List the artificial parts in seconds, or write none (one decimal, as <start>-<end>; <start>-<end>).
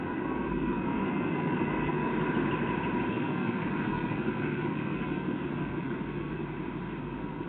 0.0-2.1; 3.1-6.4; 7.0-7.5